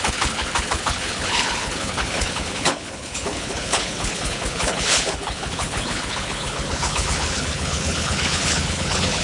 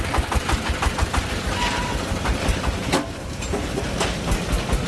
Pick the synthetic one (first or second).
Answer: first